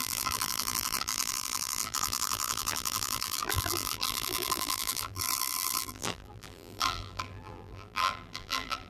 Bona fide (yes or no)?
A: no